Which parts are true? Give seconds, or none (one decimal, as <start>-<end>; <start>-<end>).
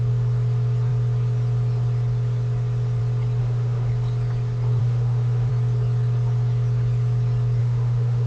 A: 0.0-3.4; 3.9-4.8; 5.5-7.6